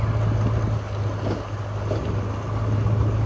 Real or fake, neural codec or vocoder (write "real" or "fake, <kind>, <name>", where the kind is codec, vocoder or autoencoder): real